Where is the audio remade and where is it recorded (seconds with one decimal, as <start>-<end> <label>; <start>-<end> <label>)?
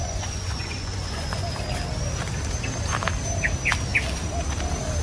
0.0-1.5 remade; 1.5-5.0 recorded